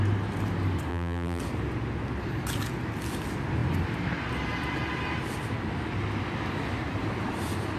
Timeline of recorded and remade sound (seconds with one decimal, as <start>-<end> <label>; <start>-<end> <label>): 0.0-0.9 recorded; 0.9-1.4 remade; 1.4-7.8 recorded